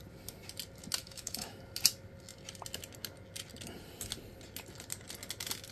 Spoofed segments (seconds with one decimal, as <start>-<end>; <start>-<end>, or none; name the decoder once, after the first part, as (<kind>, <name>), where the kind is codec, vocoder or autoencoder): 1.0-1.6 (autoencoder, DAC-VAE)